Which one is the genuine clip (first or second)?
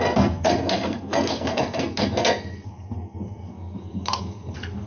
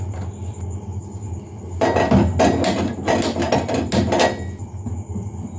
second